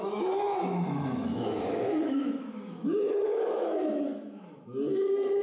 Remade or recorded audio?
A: remade